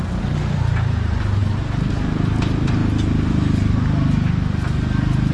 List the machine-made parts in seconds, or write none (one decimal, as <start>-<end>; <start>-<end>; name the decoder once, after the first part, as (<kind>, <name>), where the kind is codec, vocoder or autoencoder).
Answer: none